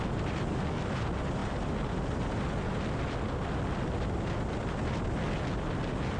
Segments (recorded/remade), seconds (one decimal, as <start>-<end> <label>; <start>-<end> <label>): 0.0-6.2 recorded